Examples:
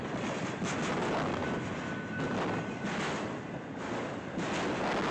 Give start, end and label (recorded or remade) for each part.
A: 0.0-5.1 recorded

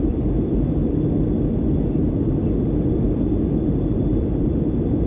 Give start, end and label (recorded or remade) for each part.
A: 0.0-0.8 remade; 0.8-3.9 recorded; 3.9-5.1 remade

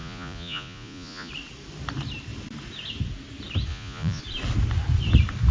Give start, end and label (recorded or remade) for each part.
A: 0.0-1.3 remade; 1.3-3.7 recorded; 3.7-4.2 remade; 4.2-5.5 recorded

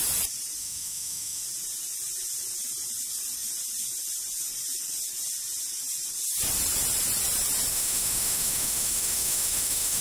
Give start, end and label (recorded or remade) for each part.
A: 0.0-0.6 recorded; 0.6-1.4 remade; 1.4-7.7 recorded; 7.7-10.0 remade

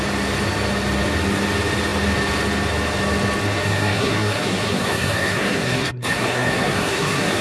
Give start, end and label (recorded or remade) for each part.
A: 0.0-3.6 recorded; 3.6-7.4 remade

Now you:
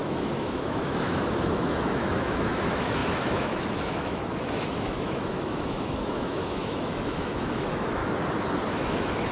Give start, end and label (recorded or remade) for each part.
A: 0.0-8.0 remade; 8.0-8.8 recorded; 8.8-9.3 remade